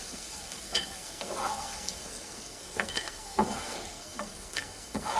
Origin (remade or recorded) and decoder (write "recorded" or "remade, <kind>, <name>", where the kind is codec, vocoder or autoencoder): remade, codec, SNAC